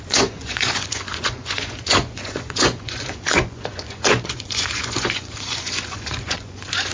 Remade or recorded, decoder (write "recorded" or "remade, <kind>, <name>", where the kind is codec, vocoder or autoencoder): remade, vocoder, Vocos